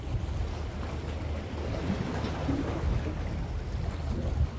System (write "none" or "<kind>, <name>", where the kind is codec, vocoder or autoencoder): none